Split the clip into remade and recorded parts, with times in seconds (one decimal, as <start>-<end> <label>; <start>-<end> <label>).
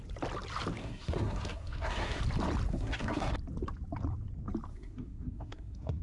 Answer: 0.0-0.8 recorded; 0.8-2.2 remade; 2.2-2.7 recorded; 2.7-3.3 remade; 3.3-4.7 recorded; 4.7-6.0 remade